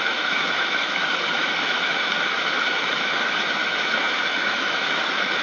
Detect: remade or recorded remade